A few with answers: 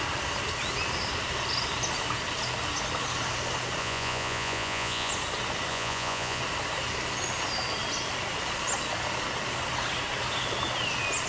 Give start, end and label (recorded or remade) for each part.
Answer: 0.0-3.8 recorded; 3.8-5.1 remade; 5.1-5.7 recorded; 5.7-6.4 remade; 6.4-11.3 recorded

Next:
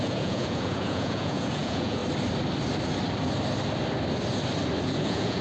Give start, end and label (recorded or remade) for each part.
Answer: 0.0-2.0 remade; 2.0-4.8 recorded; 4.8-5.4 remade

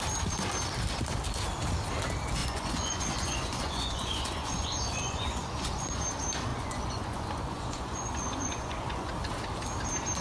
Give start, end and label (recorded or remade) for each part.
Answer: 0.0-2.4 recorded; 2.4-6.0 remade; 6.0-6.5 recorded; 6.5-9.1 remade; 9.1-10.2 recorded

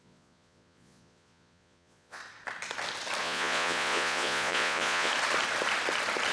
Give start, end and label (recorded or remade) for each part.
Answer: 0.0-2.2 remade; 2.2-3.2 recorded; 3.2-5.1 remade; 5.1-6.3 recorded

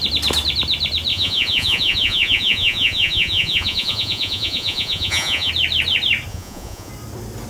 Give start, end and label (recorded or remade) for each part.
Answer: 0.0-1.1 recorded; 1.1-5.5 remade; 5.5-6.3 recorded; 6.3-6.9 remade; 6.9-7.5 recorded

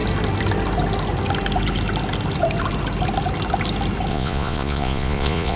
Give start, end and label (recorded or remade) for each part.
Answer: 0.0-4.1 recorded; 4.1-5.6 remade